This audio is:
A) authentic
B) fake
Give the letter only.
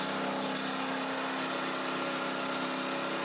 A